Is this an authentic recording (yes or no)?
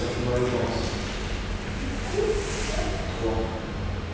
yes